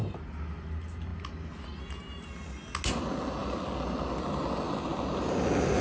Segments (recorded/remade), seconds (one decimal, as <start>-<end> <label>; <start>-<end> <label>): 0.0-5.8 recorded

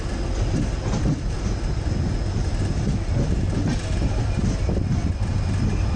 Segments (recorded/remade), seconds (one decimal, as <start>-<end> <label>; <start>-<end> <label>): 0.0-6.0 recorded

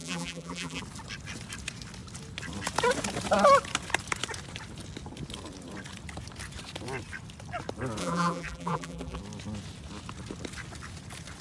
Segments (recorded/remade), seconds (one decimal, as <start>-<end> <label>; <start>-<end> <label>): 0.0-0.8 remade; 0.8-8.0 recorded; 8.0-9.2 remade; 9.2-11.4 recorded

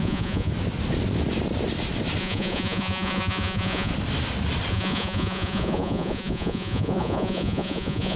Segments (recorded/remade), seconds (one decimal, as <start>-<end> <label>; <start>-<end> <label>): 0.0-0.5 remade; 0.5-2.2 recorded; 2.2-3.9 remade; 3.9-4.7 recorded; 4.7-8.2 remade

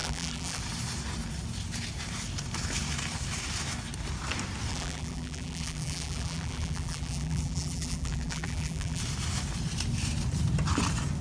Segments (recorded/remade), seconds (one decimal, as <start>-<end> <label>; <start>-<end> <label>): 0.0-0.6 remade; 0.6-4.7 recorded; 4.7-9.0 remade; 9.0-11.2 recorded